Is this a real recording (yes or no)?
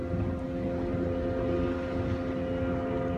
yes